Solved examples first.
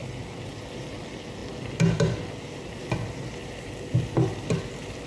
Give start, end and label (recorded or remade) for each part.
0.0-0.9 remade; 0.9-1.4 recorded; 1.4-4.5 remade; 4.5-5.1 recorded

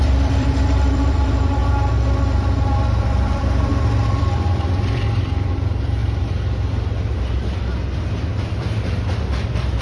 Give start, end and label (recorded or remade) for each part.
0.0-1.6 remade; 1.6-3.0 recorded; 3.0-6.0 remade; 6.0-8.2 recorded; 8.2-9.8 remade

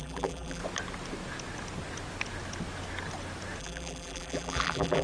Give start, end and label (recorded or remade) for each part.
0.0-0.6 remade; 0.6-3.6 recorded; 3.6-5.0 remade

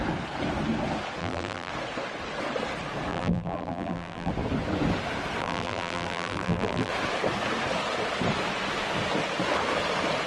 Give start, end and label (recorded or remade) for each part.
0.0-1.2 recorded; 1.2-1.7 remade; 1.7-3.1 recorded; 3.1-4.3 remade; 4.3-5.4 recorded; 5.4-6.9 remade; 6.9-10.3 recorded

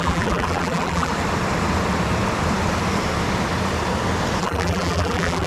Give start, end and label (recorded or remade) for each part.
0.0-1.1 remade; 1.1-4.4 recorded; 4.4-5.5 remade

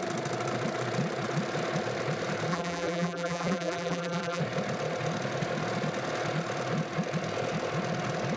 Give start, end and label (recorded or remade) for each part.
0.0-2.5 recorded; 2.5-4.4 remade; 4.4-8.4 recorded

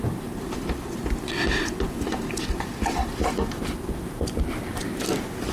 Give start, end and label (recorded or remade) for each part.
0.0-3.0 remade; 3.0-3.9 recorded; 3.9-5.5 remade